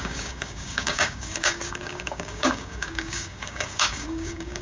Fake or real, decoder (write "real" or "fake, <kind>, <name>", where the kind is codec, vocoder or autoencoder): fake, codec, DAC